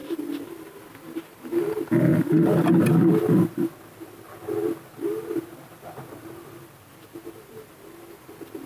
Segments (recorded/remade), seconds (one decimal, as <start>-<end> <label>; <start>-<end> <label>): 0.0-0.8 remade; 0.8-2.1 recorded; 2.1-2.9 remade; 2.9-8.7 recorded